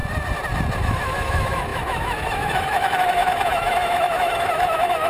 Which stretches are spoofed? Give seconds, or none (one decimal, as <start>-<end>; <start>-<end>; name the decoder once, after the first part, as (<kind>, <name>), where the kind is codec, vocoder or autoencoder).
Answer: 0.8-5.1 (autoencoder, DAC-VAE)